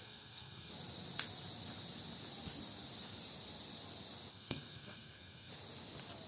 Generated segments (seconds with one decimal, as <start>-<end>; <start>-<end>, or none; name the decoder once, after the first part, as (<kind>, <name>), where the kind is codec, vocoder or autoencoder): 0.0-0.7 (codec, SNAC); 4.3-5.5